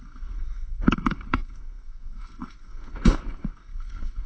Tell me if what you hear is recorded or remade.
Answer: remade